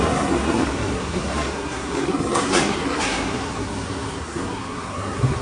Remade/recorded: remade